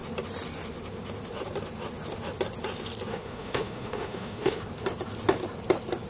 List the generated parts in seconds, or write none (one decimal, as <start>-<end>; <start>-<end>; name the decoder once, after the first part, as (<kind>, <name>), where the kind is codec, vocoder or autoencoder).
3.1-4.6 (autoencoder, DAC-VAE)

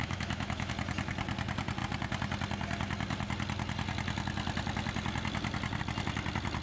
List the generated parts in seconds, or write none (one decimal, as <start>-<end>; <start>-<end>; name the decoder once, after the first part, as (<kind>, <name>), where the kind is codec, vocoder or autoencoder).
0.0-0.7 (autoencoder, DAC-VAE)

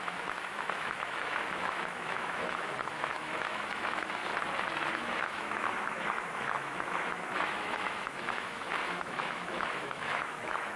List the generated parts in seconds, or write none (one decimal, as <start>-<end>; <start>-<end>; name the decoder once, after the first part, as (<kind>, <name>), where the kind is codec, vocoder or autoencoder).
0.0-4.2 (autoencoder, DAC-VAE); 4.9-10.8

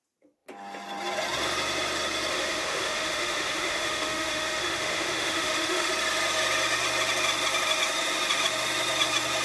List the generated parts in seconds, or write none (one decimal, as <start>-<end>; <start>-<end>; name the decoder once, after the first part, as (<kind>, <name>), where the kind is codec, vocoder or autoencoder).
2.3-5.9 (autoencoder, DAC-VAE)

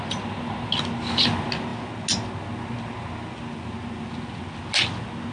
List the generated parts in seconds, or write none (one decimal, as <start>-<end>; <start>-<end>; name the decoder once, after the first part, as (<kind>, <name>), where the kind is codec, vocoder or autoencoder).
none

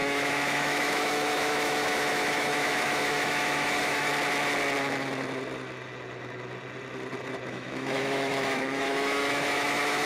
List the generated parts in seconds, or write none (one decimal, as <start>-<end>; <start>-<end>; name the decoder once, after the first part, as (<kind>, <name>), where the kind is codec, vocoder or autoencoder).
0.0-4.1 (autoencoder, DAC-VAE); 7.5-10.1